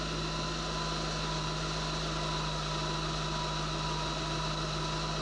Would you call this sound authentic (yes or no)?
yes